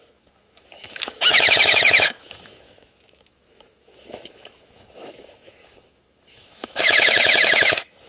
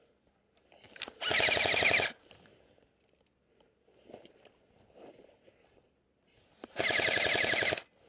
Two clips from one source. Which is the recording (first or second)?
second